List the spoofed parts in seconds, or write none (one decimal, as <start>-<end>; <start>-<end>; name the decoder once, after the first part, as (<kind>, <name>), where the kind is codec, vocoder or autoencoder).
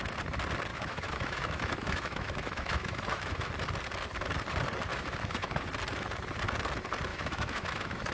0.7-3.5 (autoencoder, DAC-VAE); 4.9-5.7; 7.1-8.1